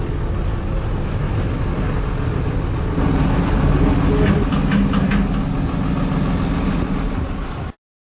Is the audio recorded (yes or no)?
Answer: yes